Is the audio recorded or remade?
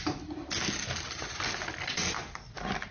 recorded